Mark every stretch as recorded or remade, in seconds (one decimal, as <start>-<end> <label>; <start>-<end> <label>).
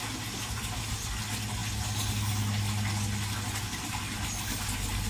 0.0-5.1 recorded